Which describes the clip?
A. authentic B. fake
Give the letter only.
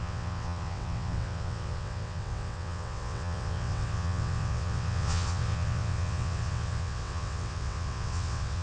B